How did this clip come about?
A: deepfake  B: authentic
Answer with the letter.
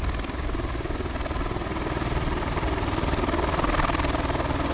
B